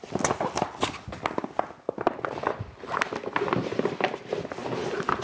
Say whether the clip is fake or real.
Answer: real